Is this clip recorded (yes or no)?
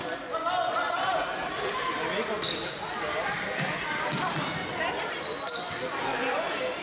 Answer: yes